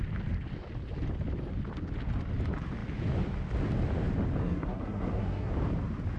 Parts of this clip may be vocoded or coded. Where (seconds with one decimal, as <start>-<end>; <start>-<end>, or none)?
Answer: 4.4-5.5

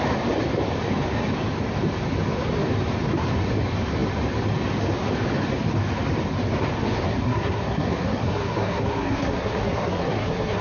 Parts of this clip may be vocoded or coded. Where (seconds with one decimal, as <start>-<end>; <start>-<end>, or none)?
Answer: 7.1-10.6

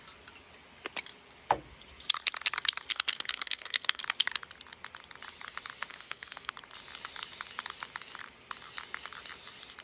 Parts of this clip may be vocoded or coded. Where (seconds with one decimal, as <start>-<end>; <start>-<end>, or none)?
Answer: 2.9-4.0; 5.9-6.5

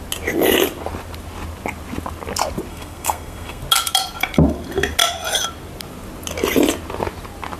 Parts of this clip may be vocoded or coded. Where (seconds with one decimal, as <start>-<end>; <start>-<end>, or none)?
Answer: 2.7-3.6

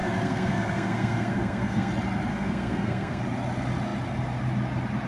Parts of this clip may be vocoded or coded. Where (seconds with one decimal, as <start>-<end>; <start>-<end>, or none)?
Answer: 0.0-1.9; 2.3-3.2

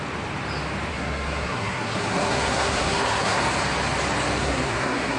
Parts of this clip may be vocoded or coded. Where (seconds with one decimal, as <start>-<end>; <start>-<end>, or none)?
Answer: 0.9-3.4; 4.4-5.2